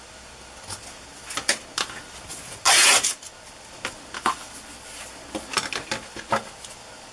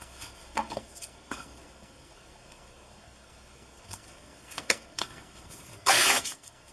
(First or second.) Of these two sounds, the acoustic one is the first